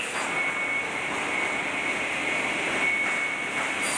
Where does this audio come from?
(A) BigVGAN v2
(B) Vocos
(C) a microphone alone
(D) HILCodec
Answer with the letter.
C